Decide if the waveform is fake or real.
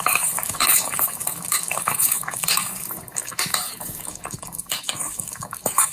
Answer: fake